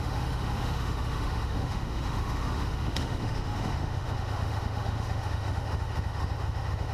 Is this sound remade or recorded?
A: remade